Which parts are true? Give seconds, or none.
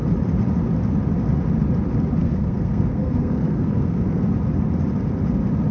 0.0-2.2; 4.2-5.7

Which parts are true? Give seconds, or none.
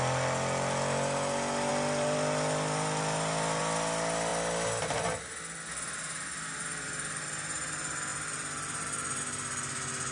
0.0-1.7; 3.6-4.3; 5.4-6.6; 7.3-8.1; 9.2-10.1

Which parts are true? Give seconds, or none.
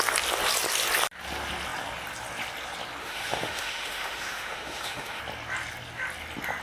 0.0-3.0; 5.2-6.6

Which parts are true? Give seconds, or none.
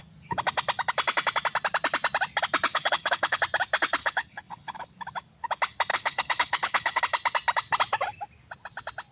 0.0-2.7; 3.4-4.0; 4.9-5.9; 7.0-9.1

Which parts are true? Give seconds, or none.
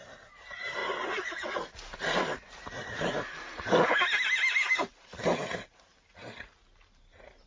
0.0-0.8; 1.6-7.5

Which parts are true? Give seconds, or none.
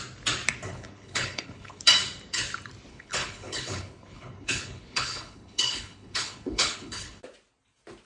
0.0-0.7; 1.8-2.9; 7.2-8.1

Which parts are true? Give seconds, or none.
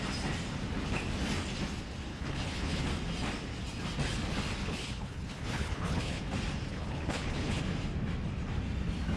0.0-2.1; 2.8-4.6; 6.2-6.7; 7.6-9.2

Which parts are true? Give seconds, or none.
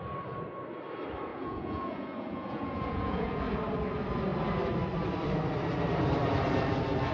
0.0-1.3; 3.4-7.1